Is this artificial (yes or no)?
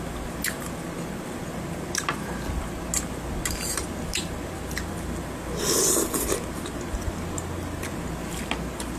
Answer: no